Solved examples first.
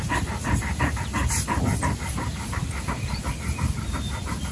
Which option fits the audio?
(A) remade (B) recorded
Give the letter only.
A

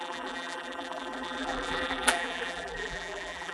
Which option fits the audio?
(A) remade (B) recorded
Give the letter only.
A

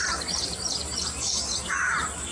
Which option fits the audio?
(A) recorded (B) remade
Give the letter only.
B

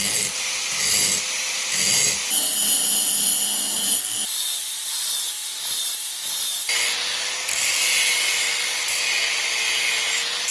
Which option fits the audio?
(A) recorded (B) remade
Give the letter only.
A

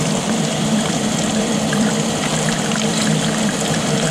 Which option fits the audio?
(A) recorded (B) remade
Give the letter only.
B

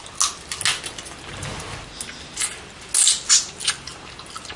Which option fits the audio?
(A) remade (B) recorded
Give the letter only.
B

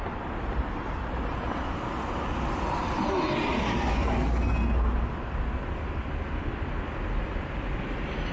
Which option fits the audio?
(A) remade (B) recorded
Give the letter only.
B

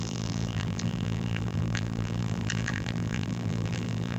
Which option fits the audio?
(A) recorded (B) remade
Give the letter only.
B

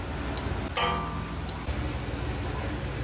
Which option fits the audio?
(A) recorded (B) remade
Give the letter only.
A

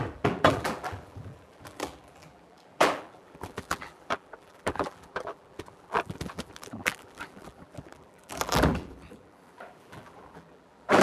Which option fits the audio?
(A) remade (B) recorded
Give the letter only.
A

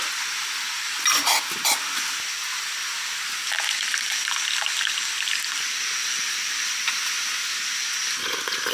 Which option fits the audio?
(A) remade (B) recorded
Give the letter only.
B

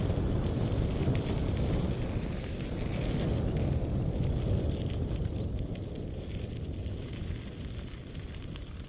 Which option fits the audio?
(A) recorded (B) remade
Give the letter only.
A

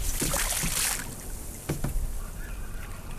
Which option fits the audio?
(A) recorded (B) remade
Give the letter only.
A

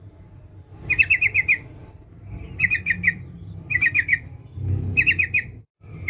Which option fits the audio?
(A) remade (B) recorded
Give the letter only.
A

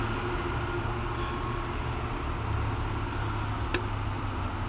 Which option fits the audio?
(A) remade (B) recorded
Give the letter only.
B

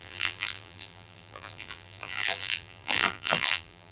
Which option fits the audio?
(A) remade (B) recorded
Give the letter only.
A